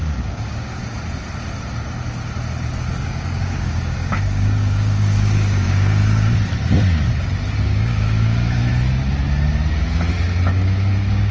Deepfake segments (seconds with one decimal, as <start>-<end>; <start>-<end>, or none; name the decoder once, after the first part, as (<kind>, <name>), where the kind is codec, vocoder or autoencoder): 0.0-0.8 (codec, DAC); 3.0-6.0; 7.6-8.7; 10.5-11.3